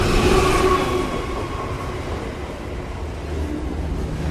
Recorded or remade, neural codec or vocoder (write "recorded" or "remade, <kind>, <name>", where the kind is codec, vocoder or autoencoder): recorded